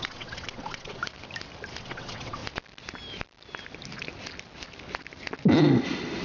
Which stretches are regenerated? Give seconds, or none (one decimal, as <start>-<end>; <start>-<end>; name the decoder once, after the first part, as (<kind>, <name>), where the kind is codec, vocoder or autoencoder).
0.0-1.0 (vocoder, WaveNeXt); 1.8-2.4